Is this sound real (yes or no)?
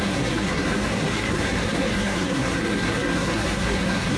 no